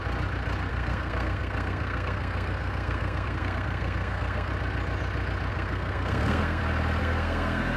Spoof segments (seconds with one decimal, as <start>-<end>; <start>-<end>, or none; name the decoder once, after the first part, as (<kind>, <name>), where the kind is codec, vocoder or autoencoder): 0.7-4.5 (codec, SNAC); 5.5-6.6; 7.0-7.8